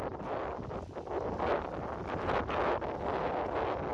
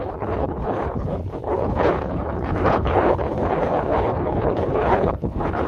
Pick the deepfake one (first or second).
second